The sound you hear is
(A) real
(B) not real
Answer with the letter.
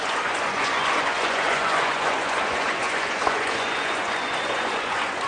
B